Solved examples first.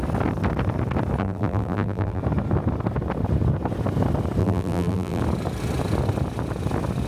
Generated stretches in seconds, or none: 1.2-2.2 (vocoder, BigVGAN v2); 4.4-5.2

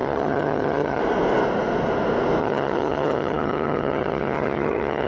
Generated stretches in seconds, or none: 0.0-1.0 (vocoder, HiFi-GAN); 2.4-5.1